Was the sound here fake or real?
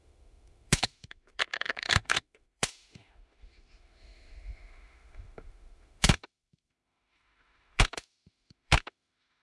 fake